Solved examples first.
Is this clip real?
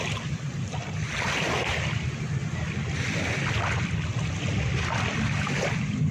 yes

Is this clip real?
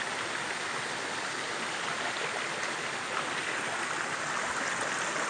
yes